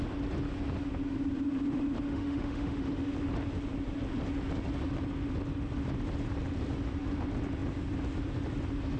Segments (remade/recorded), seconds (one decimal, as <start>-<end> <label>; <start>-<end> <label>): 0.0-2.1 recorded; 2.1-2.9 remade; 2.9-9.0 recorded